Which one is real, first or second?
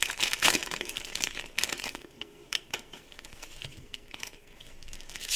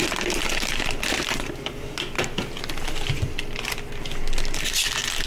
second